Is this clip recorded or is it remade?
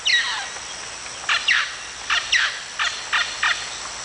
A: recorded